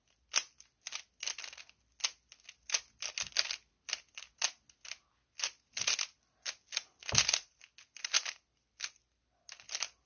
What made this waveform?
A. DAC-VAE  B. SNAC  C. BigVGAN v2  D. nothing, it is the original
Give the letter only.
D